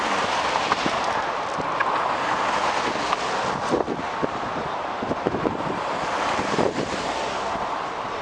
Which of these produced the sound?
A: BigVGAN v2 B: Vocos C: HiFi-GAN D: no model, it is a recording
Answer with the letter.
A